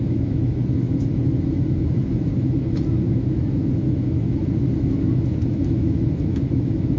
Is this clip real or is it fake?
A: fake